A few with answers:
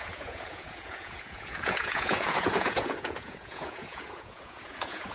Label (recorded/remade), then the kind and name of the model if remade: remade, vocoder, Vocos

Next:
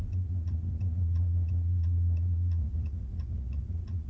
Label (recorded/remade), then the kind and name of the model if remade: remade, vocoder, Vocos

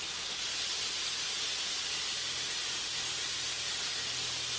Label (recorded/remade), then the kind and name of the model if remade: recorded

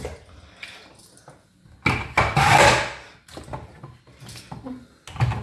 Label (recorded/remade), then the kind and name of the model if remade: recorded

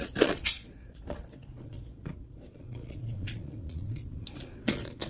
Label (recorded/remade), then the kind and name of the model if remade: remade, vocoder, Vocos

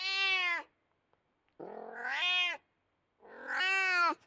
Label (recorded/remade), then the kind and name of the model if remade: recorded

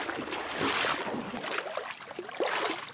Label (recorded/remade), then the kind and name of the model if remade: recorded